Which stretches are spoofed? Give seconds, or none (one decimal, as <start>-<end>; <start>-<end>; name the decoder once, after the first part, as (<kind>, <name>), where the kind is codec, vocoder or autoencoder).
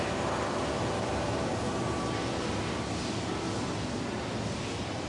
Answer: none